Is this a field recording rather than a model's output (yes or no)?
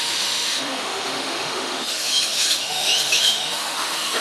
no